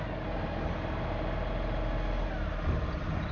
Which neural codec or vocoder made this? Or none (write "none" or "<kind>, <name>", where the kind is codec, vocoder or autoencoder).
none